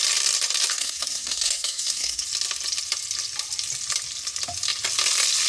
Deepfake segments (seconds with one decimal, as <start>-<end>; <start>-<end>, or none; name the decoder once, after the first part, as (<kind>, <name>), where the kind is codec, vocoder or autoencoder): 0.7-2.2 (codec, SNAC)